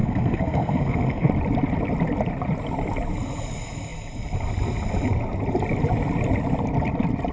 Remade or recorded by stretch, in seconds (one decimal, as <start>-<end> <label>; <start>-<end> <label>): 0.0-1.3 remade; 1.3-7.3 recorded

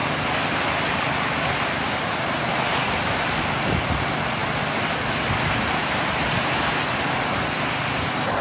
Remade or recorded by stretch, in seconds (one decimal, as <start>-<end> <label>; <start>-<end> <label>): 0.0-2.5 remade; 2.5-8.4 recorded

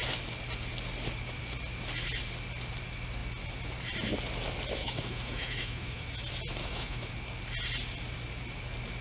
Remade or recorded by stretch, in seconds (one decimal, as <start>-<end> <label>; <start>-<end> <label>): 0.0-4.8 recorded; 4.8-6.1 remade; 6.1-6.6 recorded; 6.6-7.1 remade; 7.1-9.0 recorded

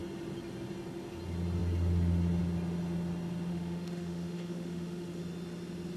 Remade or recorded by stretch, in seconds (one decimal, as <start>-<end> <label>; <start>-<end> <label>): 0.0-3.5 recorded; 3.5-5.2 remade; 5.2-6.0 recorded

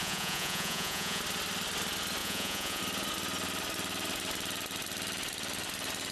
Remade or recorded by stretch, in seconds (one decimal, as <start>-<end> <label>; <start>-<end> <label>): 0.0-1.2 remade; 1.2-2.2 recorded; 2.2-2.8 remade; 2.8-6.1 recorded

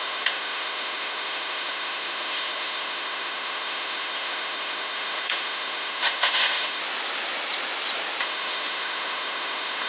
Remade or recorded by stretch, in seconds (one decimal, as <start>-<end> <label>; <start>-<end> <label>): 0.0-6.8 remade; 6.8-8.2 recorded; 8.2-9.9 remade

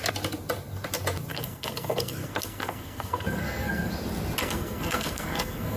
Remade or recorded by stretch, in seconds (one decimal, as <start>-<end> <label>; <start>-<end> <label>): 0.0-1.3 recorded; 1.3-3.9 remade; 3.9-4.4 recorded; 4.4-5.8 remade

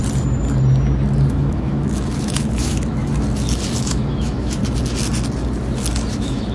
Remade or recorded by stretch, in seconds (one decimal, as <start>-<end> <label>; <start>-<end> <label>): 0.0-1.3 recorded; 1.3-3.1 remade; 3.1-3.8 recorded; 3.8-4.6 remade; 4.6-6.1 recorded; 6.1-6.5 remade